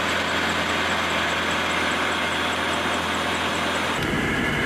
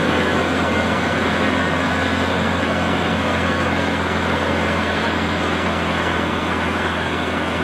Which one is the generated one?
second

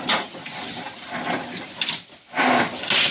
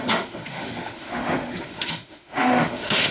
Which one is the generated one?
second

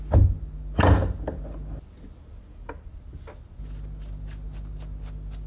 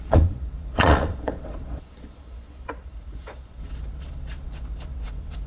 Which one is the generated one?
second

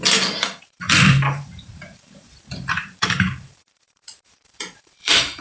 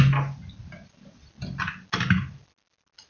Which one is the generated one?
first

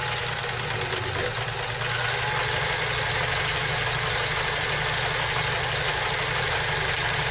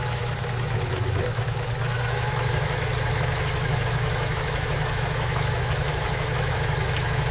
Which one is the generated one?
second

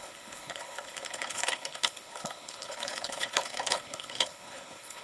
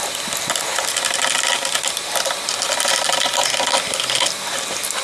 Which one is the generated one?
first